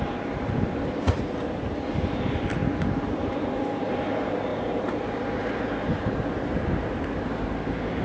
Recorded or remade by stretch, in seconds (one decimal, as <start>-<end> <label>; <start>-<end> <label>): 0.0-8.0 remade